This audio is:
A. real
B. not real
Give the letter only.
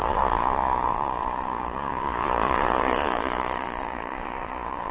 B